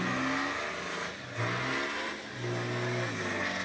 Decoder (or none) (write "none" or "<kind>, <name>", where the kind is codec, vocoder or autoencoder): none